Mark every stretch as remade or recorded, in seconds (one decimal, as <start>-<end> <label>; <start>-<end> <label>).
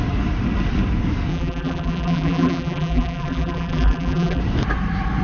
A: 0.0-1.3 recorded; 1.3-4.4 remade; 4.4-5.2 recorded